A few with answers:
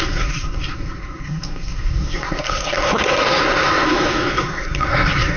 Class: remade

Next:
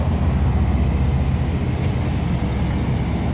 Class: recorded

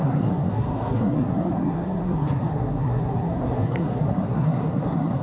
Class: remade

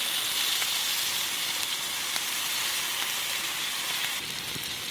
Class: recorded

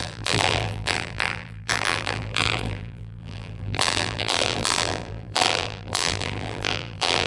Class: remade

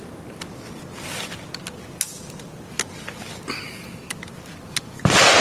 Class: recorded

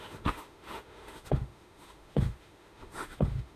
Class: remade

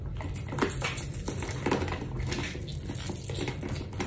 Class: recorded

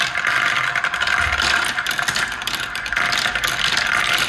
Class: recorded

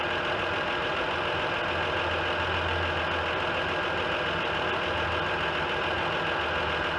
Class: recorded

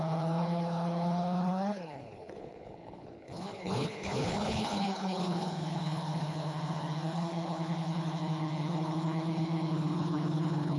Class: remade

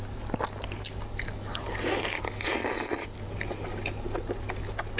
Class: recorded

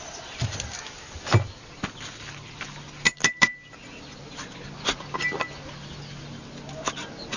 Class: recorded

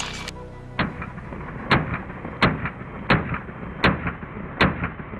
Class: recorded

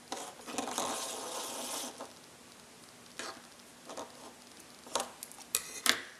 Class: recorded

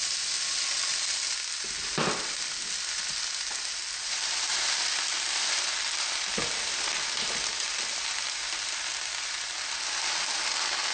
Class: recorded